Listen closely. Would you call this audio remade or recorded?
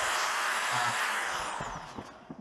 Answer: recorded